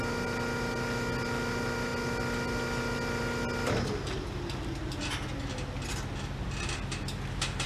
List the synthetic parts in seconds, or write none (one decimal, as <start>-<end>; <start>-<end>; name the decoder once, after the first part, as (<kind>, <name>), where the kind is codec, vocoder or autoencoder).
none